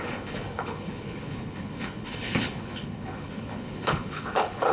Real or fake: fake